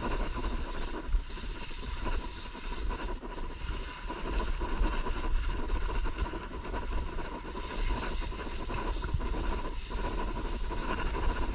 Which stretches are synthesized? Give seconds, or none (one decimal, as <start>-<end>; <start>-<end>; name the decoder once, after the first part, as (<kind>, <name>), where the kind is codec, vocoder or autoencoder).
0.4-3.5 (vocoder, BigVGAN v2)